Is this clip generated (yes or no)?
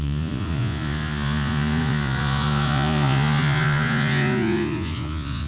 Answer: yes